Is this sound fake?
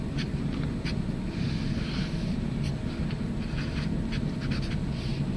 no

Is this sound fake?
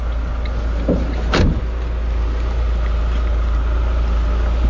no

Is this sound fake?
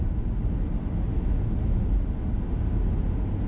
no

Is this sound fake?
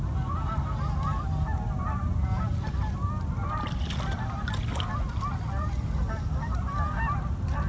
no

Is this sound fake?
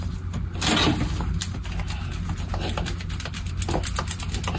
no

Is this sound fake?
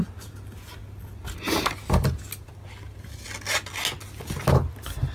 no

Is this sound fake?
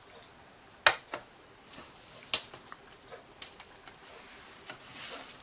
no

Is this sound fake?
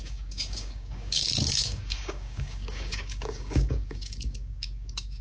yes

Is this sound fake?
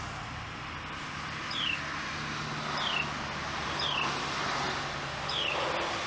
no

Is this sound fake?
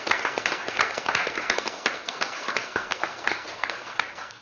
yes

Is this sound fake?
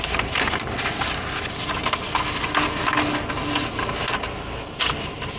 no